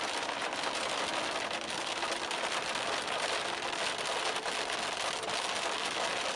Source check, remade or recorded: recorded